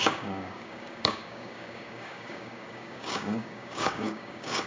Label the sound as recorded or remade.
remade